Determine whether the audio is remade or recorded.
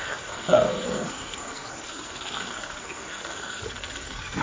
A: remade